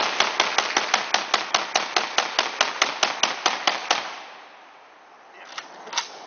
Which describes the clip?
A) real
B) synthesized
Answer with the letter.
A